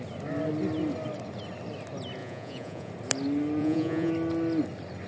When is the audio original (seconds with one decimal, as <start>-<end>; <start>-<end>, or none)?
0.0-2.2; 2.9-3.6; 4.1-5.1